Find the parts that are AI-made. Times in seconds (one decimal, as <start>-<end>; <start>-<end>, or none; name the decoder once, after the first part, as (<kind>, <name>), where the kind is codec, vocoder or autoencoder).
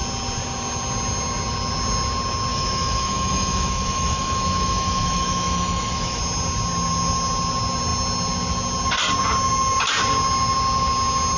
2.5-6.2 (autoencoder, DAC-VAE)